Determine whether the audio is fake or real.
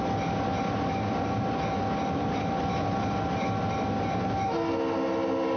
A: real